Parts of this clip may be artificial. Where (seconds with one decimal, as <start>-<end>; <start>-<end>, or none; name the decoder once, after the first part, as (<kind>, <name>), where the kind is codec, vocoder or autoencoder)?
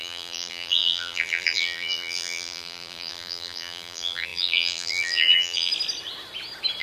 0.0-5.7 (vocoder, BigVGAN v2)